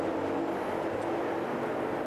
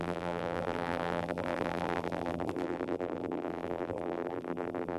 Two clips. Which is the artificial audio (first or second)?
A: second